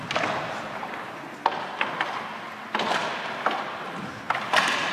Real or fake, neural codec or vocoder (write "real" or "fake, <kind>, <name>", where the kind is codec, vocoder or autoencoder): real